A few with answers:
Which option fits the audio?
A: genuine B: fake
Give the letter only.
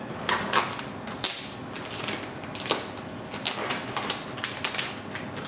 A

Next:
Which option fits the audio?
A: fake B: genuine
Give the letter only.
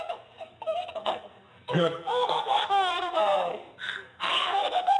A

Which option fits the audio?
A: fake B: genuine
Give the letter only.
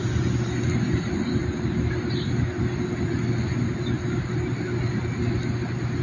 B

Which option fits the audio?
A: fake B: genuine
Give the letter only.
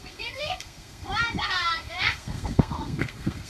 A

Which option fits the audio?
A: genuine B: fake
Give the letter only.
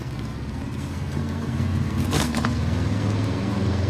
B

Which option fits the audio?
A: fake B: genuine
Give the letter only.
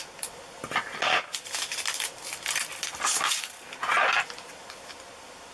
B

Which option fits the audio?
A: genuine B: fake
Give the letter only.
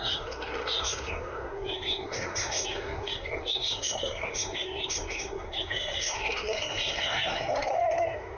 B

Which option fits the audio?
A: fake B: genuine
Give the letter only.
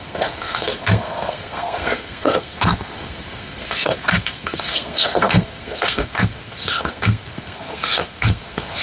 A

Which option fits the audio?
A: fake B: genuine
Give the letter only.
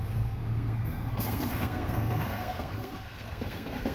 A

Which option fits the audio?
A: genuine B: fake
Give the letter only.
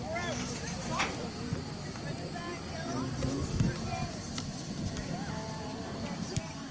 A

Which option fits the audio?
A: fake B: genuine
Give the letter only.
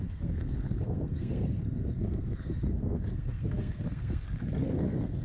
A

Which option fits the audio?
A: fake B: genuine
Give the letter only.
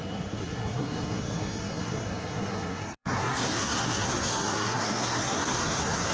A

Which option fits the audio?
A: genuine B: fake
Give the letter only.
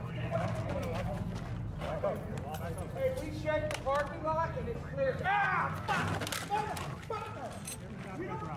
A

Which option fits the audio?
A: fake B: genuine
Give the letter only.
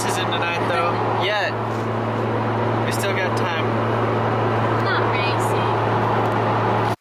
B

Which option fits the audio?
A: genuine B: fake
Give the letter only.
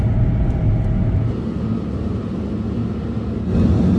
A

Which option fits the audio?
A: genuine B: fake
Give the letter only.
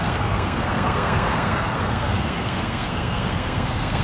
B